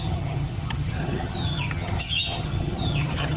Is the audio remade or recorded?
remade